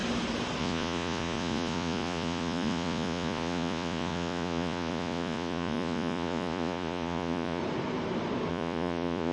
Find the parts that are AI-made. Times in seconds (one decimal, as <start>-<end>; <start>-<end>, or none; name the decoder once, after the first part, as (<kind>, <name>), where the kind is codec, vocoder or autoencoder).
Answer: 0.6-7.6 (vocoder, Vocos); 8.5-9.3